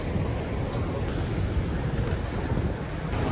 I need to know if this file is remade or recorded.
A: recorded